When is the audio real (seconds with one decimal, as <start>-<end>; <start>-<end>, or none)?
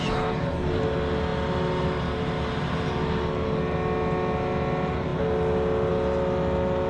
0.0-6.9